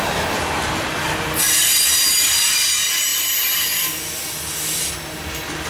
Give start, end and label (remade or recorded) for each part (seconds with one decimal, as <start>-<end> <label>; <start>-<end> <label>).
0.0-5.7 recorded